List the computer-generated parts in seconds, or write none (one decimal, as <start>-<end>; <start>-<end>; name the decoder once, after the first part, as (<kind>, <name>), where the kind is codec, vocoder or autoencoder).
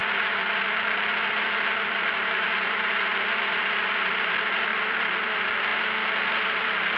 0.0-5.7 (vocoder, BigVGAN v2); 6.3-7.0